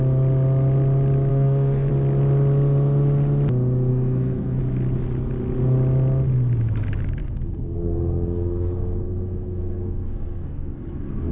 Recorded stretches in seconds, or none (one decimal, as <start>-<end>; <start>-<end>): 0.0-1.3; 1.9-3.9; 4.6-7.2